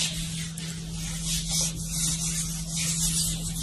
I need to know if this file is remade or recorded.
recorded